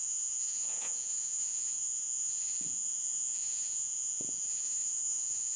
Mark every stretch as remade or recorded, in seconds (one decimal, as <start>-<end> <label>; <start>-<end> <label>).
0.0-5.6 remade